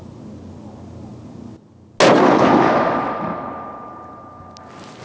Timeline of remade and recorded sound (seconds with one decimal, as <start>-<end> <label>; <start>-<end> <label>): 0.0-5.0 recorded